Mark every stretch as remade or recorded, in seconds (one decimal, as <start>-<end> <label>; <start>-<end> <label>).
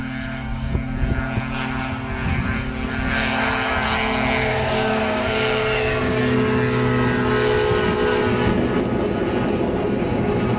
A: 0.0-4.5 recorded; 4.5-6.2 remade; 6.2-10.6 recorded